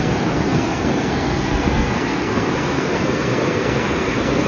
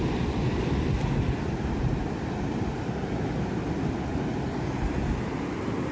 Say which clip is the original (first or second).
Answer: second